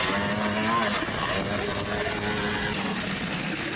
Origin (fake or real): real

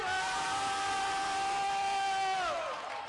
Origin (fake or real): real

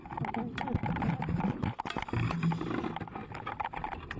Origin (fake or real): real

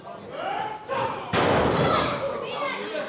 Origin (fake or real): real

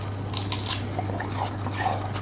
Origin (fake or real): real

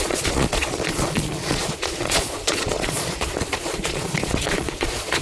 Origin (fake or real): fake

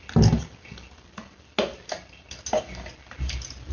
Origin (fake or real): real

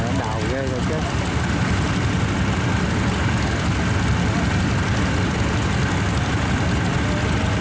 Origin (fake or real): real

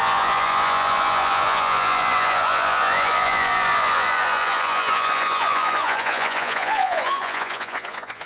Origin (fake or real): fake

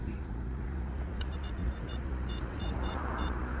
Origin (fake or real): fake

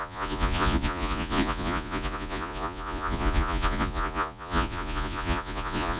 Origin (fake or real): fake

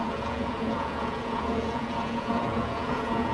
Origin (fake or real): fake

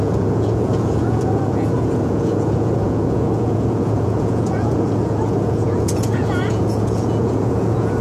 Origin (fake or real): fake